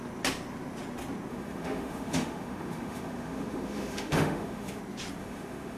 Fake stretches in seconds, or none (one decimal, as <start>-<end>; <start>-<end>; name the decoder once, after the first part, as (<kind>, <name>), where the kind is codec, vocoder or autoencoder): 1.3-4.8 (autoencoder, DAC-VAE); 5.2-5.8